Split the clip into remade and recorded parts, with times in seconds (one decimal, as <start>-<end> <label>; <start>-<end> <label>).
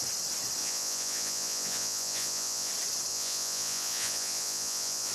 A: 0.0-0.6 recorded; 0.6-2.7 remade; 2.7-3.1 recorded; 3.1-5.1 remade